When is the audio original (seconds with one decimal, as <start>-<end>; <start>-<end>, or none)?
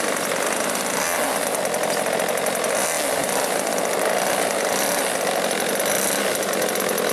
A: 0.0-3.2; 3.8-7.1